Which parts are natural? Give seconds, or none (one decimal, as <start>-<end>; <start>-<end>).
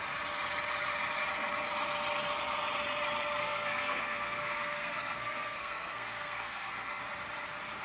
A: 0.0-3.4; 7.0-7.8